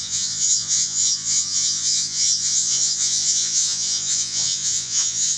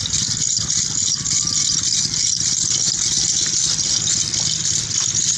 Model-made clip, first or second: first